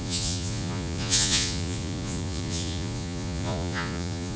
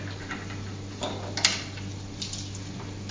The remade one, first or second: first